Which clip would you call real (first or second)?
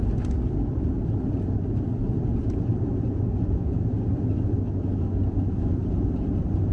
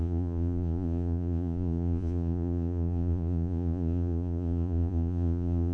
first